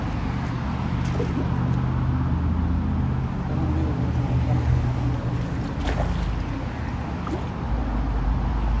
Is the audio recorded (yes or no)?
yes